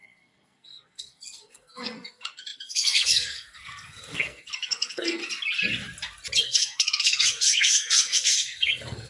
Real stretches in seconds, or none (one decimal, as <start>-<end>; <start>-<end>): 5.2-6.4